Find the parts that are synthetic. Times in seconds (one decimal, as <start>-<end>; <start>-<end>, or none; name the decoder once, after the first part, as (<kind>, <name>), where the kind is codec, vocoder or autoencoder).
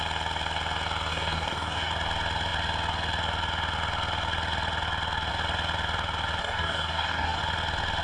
1.1-1.9 (codec, DAC); 6.4-7.4